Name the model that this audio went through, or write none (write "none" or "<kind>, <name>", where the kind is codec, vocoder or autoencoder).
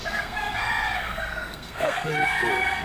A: codec, SNAC